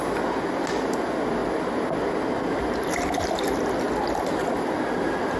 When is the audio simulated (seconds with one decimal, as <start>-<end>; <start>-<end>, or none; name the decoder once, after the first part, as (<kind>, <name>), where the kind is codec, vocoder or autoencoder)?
none

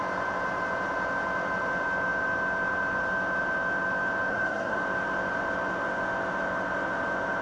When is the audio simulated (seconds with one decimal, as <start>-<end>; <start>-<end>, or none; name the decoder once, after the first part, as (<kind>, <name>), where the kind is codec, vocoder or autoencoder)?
4.3-4.8 (codec, SNAC)

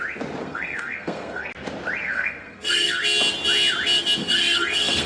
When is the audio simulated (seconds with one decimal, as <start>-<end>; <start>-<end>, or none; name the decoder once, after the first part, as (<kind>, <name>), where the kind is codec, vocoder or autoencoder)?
0.4-1.5 (codec, SNAC); 2.0-3.0; 4.2-5.1

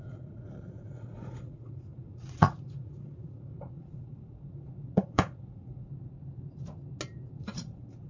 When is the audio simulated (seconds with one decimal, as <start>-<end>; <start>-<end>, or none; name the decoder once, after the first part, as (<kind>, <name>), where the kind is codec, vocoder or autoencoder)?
0.0-5.9 (vocoder, Vocos); 7.4-8.1

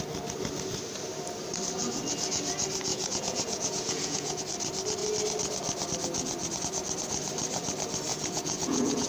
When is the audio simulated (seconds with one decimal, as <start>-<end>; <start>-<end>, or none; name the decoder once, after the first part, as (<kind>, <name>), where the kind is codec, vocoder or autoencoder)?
2.9-4.4 (vocoder, Vocos); 8.1-9.1